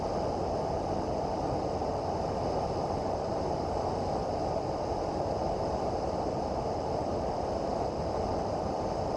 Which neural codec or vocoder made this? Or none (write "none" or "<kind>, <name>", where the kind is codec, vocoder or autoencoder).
none